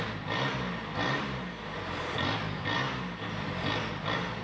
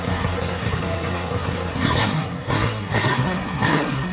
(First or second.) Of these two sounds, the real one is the first